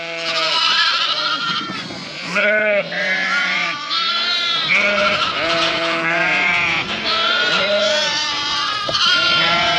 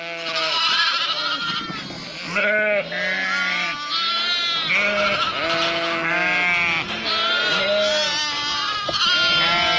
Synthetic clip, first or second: first